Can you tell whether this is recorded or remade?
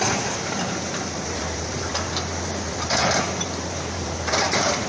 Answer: remade